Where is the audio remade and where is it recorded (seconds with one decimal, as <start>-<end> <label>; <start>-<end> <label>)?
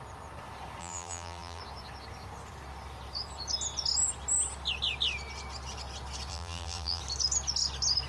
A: 0.0-0.8 recorded; 0.8-1.6 remade; 1.6-6.3 recorded; 6.3-7.0 remade; 7.0-8.1 recorded